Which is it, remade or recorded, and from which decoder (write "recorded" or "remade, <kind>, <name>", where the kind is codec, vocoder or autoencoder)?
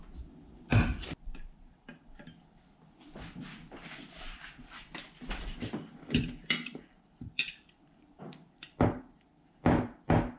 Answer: remade, vocoder, BigVGAN v2